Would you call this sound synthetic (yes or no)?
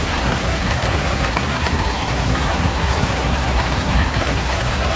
yes